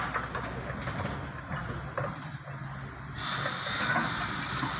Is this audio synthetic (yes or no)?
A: no